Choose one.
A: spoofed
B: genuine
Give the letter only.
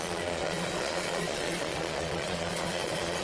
A